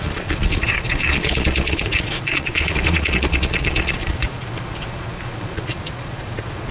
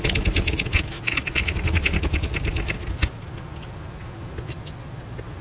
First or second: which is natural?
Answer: second